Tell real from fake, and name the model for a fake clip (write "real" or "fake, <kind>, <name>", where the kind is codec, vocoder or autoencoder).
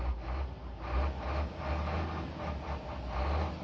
real